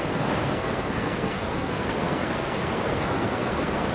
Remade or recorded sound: remade